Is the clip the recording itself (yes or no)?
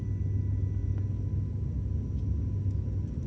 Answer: yes